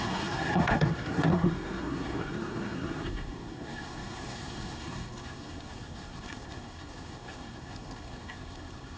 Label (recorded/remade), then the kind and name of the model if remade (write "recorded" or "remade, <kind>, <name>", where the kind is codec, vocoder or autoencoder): remade, codec, SNAC